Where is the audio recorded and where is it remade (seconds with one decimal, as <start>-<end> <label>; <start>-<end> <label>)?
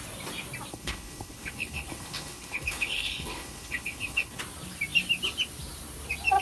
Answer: 0.0-0.7 recorded; 0.7-4.4 remade; 4.4-6.4 recorded